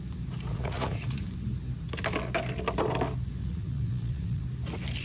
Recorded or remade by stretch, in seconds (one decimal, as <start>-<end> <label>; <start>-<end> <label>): 0.0-0.5 recorded; 0.5-1.2 remade; 1.2-3.4 recorded; 3.4-4.4 remade; 4.4-5.0 recorded